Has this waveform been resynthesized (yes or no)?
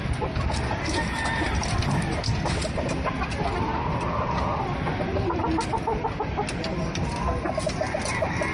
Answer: no